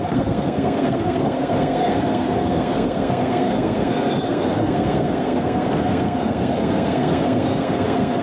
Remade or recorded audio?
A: remade